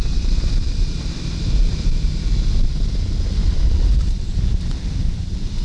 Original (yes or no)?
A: no